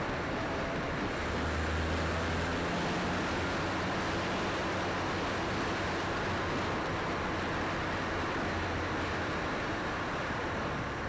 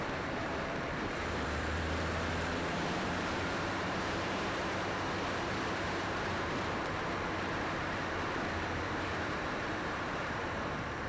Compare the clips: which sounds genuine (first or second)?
first